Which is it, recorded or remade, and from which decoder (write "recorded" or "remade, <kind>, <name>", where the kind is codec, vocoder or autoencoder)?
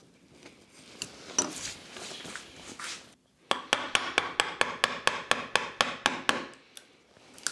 recorded